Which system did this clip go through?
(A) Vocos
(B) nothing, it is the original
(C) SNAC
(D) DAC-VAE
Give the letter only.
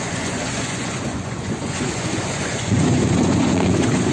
A